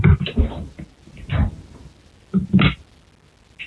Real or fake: real